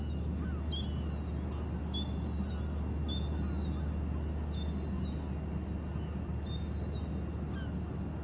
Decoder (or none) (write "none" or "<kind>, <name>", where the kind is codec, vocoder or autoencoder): none